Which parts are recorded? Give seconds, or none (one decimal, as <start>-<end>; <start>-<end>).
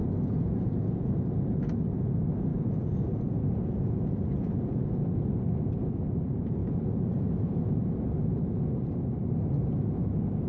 1.1-2.5; 5.3-6.6; 7.8-10.5